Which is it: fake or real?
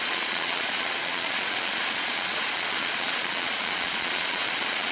fake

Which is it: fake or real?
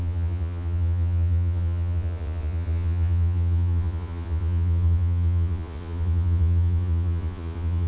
fake